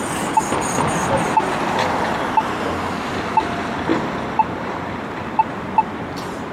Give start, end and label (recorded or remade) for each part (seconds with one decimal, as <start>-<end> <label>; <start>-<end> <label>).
0.0-3.9 recorded; 3.9-6.5 remade